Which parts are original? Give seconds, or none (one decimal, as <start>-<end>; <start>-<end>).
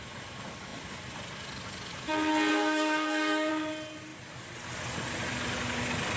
0.0-2.5; 3.5-6.2